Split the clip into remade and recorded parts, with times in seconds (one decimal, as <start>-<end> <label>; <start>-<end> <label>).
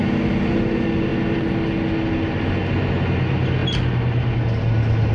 0.0-5.1 recorded